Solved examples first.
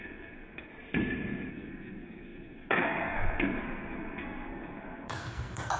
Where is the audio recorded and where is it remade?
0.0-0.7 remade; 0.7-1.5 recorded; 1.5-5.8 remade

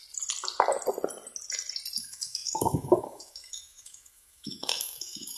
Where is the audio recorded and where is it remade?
0.0-2.0 recorded; 2.0-5.4 remade

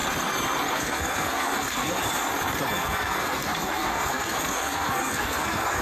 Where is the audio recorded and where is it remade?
0.0-0.7 recorded; 0.7-2.0 remade; 2.0-2.7 recorded; 2.7-5.8 remade